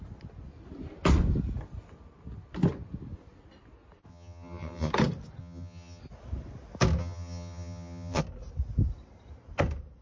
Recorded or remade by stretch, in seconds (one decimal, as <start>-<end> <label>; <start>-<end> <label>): 0.0-4.1 recorded; 4.1-4.9 remade; 4.9-5.4 recorded; 5.4-6.0 remade; 6.0-7.0 recorded; 7.0-8.2 remade; 8.2-10.0 recorded